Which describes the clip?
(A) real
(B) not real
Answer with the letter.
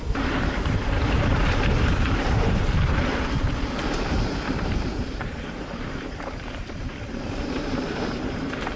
B